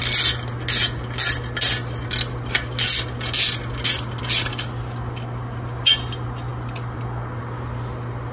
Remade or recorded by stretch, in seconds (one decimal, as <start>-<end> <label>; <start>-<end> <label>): 0.0-8.3 recorded